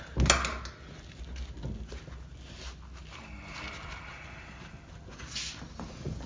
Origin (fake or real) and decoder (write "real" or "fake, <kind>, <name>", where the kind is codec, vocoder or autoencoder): real